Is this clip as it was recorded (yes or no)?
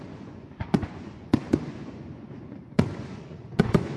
no